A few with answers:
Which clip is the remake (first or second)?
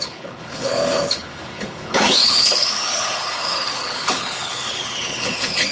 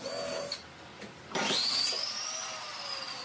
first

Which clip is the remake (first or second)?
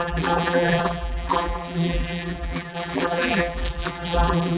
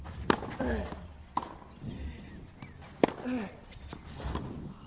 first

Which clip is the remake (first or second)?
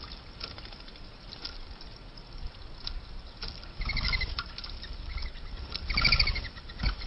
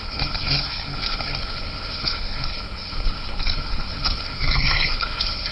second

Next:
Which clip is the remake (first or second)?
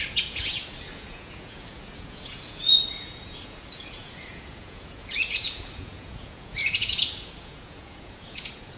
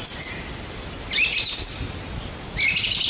first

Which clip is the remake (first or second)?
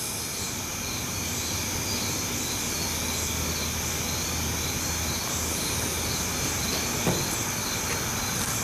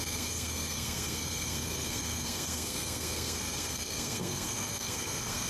second